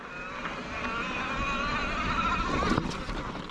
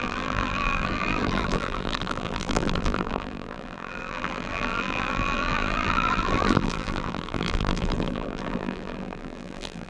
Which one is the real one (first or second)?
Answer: first